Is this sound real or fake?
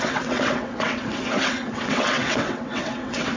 fake